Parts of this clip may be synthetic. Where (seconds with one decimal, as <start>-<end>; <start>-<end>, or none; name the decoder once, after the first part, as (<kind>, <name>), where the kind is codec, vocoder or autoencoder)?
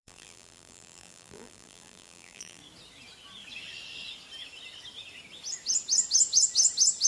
0.0-2.6 (vocoder, BigVGAN v2)